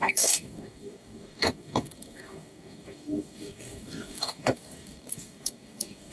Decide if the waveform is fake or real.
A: fake